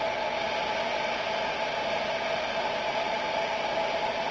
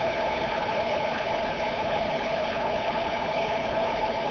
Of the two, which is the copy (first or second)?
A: second